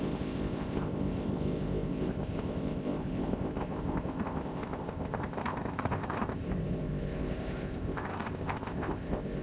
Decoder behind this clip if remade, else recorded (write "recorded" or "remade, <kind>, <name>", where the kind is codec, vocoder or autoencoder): remade, codec, ZipCodec